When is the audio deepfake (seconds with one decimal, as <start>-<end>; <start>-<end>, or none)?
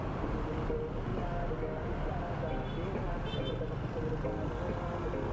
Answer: none